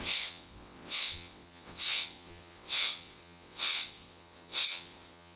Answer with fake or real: fake